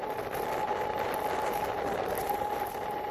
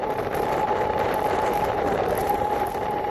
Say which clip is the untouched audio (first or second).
first